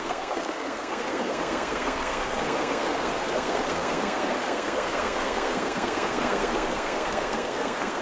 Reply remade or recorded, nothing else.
remade